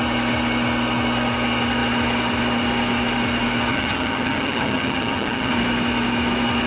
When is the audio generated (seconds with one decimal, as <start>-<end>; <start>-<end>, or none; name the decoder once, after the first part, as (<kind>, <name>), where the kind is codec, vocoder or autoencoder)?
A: 3.7-5.5 (vocoder, HiFi-GAN)